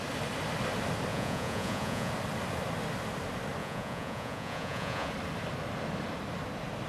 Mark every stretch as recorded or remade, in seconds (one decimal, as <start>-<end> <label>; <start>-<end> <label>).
0.0-1.1 recorded; 1.1-2.1 remade; 2.1-3.6 recorded; 3.6-5.1 remade; 5.1-6.9 recorded